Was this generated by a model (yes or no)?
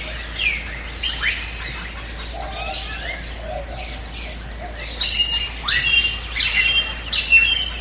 no